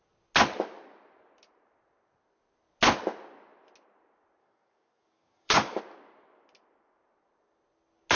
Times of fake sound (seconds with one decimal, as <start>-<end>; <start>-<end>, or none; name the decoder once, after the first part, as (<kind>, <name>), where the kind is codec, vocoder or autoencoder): 4.4-5.8 (codec, DAC)